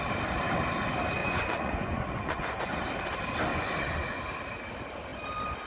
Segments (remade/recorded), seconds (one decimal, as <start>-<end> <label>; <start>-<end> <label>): 0.0-1.2 recorded; 1.2-2.8 remade; 2.8-3.5 recorded; 3.5-4.2 remade; 4.2-5.7 recorded

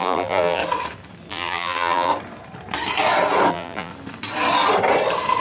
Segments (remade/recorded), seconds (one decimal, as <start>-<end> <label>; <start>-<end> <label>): 0.0-0.6 remade; 0.6-1.3 recorded; 1.3-2.1 remade; 2.1-3.5 recorded; 3.5-3.9 remade; 3.9-5.4 recorded

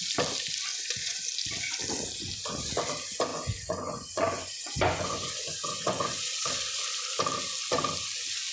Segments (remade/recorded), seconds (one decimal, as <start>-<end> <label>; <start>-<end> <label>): 0.0-0.7 recorded; 0.7-1.2 remade; 1.2-3.3 recorded; 3.3-6.3 remade; 6.3-8.5 recorded

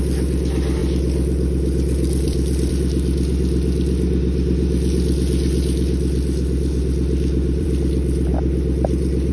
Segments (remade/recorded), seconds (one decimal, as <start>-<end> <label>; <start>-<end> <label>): 0.0-8.3 remade; 8.3-9.3 recorded